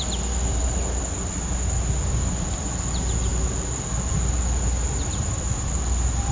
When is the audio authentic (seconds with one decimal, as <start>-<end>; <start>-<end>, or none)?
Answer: 0.0-6.3